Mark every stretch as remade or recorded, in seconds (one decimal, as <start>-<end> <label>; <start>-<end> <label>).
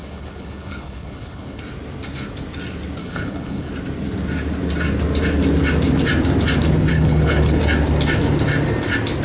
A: 0.0-1.6 remade; 1.6-3.0 recorded; 3.0-3.7 remade; 3.7-6.9 recorded; 6.9-7.6 remade; 7.6-9.2 recorded